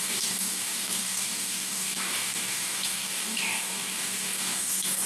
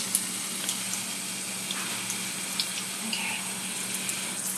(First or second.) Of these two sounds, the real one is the second